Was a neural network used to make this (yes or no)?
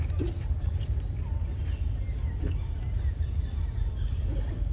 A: no